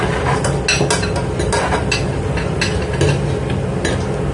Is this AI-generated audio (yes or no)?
no